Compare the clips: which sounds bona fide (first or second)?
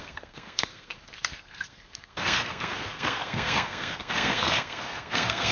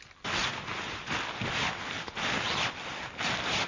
second